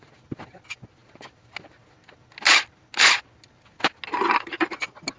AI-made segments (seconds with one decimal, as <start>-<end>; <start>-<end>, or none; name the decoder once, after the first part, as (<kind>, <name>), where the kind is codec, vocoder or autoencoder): none